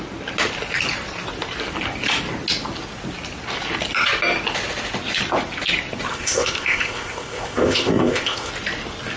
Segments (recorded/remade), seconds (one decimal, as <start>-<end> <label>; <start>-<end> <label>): 0.0-6.1 recorded; 6.1-8.5 remade; 8.5-9.2 recorded